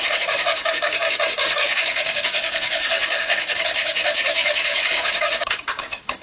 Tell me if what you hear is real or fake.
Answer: fake